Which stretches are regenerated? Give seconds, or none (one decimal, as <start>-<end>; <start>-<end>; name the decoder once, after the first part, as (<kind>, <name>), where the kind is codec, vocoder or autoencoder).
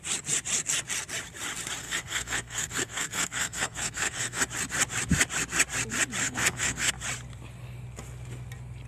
1.8-4.4 (codec, SNAC); 6.2-6.9